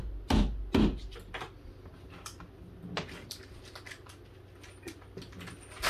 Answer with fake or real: real